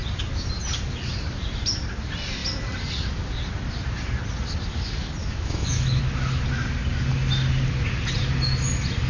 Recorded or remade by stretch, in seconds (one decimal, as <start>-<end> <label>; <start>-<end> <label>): 0.0-5.2 recorded; 5.2-6.0 remade; 6.0-9.1 recorded